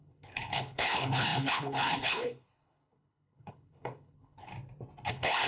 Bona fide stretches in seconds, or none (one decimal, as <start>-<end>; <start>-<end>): 4.5-5.1